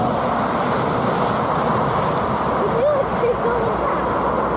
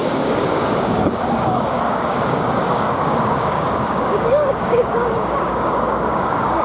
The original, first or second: first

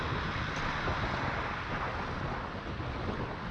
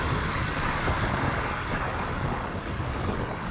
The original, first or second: first